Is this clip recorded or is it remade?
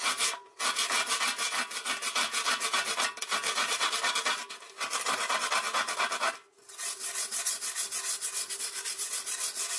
recorded